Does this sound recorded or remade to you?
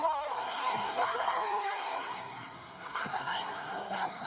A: remade